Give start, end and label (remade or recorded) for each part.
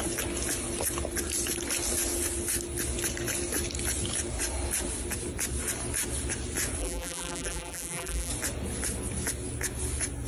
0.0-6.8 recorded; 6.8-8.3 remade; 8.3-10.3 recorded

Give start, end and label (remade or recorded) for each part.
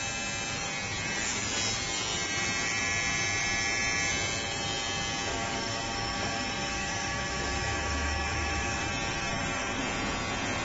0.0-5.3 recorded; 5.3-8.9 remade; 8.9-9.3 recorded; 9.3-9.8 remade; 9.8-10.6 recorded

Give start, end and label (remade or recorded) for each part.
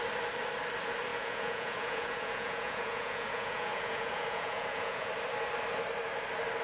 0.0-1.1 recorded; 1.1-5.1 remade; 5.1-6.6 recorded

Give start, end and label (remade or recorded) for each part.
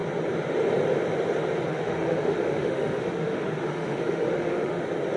0.0-1.7 recorded; 1.7-4.8 remade; 4.8-5.2 recorded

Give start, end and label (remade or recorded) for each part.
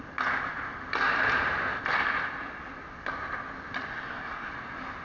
0.0-3.9 recorded; 3.9-4.5 remade; 4.5-5.0 recorded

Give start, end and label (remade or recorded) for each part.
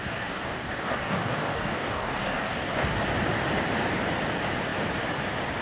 0.0-3.0 remade; 3.0-5.6 recorded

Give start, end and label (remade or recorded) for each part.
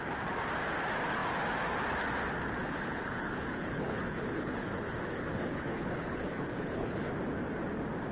0.0-2.6 recorded; 2.6-7.1 remade; 7.1-8.1 recorded